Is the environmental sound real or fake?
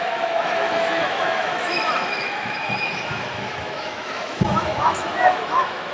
fake